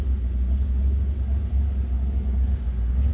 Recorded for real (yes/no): yes